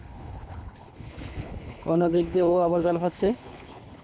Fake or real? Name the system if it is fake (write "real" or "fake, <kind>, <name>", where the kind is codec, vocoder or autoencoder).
fake, codec, HILCodec